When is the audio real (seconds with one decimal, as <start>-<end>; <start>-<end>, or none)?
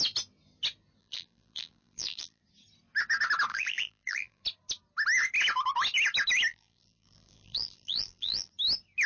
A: 0.0-1.0; 2.4-3.5; 4.4-6.5; 8.5-9.1